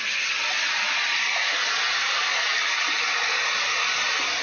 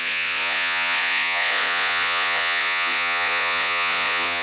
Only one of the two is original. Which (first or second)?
first